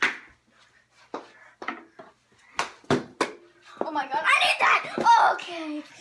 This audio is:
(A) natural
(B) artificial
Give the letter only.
A